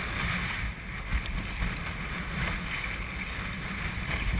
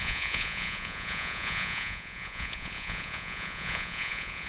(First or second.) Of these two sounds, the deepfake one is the second